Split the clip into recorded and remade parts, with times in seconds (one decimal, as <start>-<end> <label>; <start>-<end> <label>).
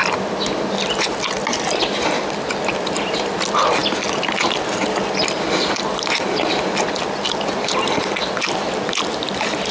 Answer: 0.0-9.7 recorded